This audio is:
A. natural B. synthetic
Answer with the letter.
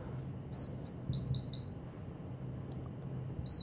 A